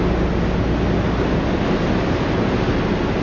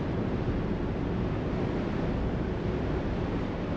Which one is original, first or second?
first